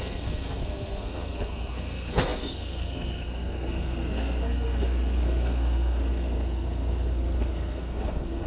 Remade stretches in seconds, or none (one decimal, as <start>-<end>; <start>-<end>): 0.0-8.5